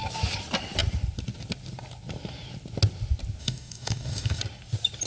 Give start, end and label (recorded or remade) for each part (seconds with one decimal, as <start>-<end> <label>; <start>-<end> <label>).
0.0-3.4 recorded; 3.4-4.4 remade; 4.4-5.1 recorded

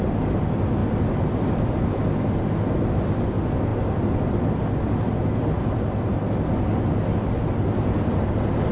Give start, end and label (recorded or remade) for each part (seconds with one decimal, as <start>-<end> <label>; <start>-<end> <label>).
0.0-8.7 recorded

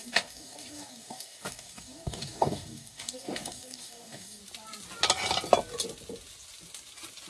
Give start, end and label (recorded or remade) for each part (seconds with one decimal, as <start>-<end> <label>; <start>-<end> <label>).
0.0-4.4 remade; 4.4-7.3 recorded

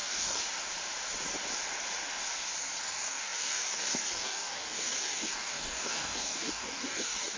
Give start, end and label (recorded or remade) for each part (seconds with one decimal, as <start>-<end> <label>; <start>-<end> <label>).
0.0-0.4 remade; 0.4-2.8 recorded; 2.8-7.4 remade

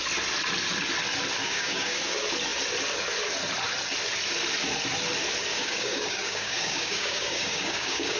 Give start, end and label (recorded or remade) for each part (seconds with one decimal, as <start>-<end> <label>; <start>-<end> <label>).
0.0-1.4 recorded; 1.4-2.0 remade; 2.0-5.5 recorded; 5.5-8.2 remade

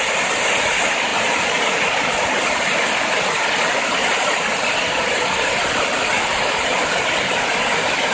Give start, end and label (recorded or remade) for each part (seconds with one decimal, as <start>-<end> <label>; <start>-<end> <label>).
0.0-8.1 recorded

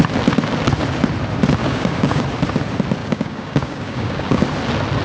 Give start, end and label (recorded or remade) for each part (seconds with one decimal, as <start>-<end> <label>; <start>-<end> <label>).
0.0-1.6 recorded; 1.6-2.2 remade; 2.2-3.0 recorded; 3.0-4.4 remade; 4.4-5.0 recorded